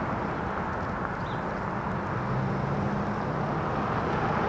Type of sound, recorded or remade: recorded